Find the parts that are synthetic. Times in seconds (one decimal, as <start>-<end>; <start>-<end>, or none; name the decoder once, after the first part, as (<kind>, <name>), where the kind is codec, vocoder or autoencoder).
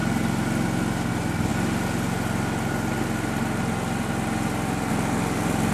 none